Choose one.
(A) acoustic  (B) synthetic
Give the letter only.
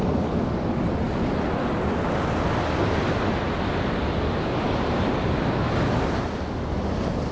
A